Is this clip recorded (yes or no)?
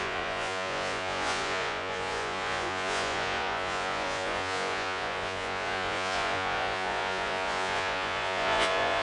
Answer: no